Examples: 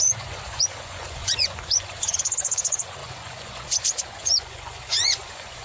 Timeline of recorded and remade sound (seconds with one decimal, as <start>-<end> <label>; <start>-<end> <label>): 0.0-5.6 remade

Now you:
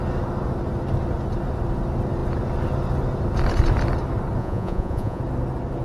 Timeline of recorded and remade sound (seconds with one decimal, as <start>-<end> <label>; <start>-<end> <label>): 0.0-4.4 recorded; 4.4-5.2 remade; 5.2-5.8 recorded

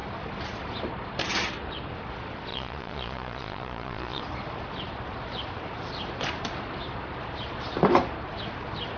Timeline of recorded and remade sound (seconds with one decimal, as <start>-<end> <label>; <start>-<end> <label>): 0.0-2.5 recorded; 2.5-4.2 remade; 4.2-9.0 recorded

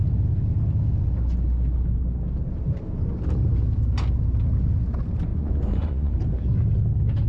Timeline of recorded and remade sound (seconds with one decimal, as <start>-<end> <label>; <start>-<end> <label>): 0.0-5.3 recorded; 5.3-6.1 remade; 6.1-7.3 recorded

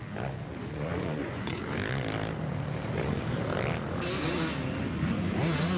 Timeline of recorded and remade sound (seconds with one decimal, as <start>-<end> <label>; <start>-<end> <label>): 0.0-0.5 recorded; 0.5-1.6 remade; 1.6-5.8 recorded